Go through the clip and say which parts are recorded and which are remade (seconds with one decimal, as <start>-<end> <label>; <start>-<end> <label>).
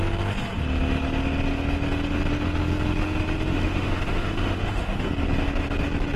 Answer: 0.0-3.5 recorded; 3.5-5.0 remade; 5.0-6.2 recorded